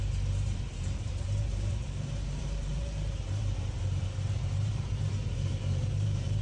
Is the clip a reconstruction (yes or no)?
yes